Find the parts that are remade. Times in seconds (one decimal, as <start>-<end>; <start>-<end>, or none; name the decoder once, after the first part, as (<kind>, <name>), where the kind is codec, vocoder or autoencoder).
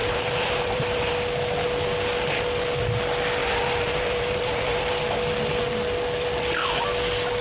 0.0-1.1 (vocoder, BigVGAN v2); 3.4-5.0